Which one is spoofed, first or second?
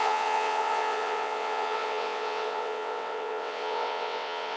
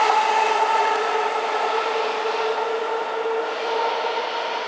first